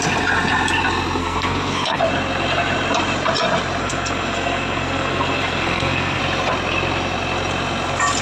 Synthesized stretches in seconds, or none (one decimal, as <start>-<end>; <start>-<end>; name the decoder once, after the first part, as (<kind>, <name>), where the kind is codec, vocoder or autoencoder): 1.2-2.0 (codec, SNAC); 3.8-6.2